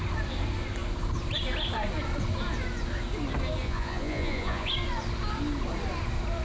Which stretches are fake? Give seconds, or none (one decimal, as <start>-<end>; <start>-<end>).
3.6-4.7